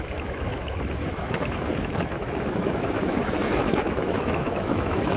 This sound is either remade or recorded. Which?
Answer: remade